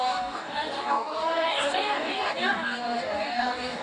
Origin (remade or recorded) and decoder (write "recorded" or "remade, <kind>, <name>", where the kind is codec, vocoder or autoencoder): remade, codec, DAC